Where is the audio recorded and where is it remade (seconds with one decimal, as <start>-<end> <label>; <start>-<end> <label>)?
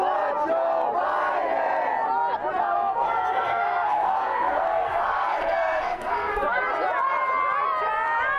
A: 0.0-2.6 recorded; 2.6-6.6 remade; 6.6-8.4 recorded